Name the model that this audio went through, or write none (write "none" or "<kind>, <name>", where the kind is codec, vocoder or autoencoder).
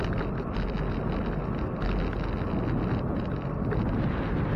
none